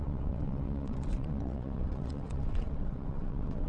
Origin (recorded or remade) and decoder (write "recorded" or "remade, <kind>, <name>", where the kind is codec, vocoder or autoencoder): remade, vocoder, WaveNeXt